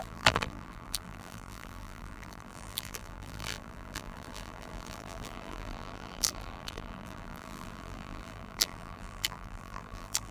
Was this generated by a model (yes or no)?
yes